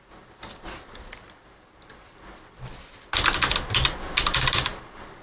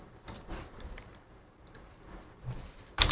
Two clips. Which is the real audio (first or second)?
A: first